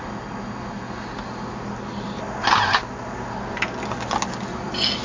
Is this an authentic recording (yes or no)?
yes